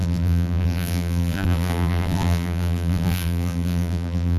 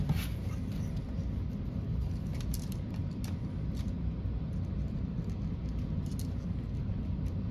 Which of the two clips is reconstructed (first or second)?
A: first